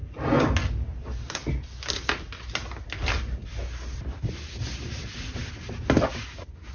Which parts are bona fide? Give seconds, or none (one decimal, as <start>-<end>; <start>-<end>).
0.0-6.7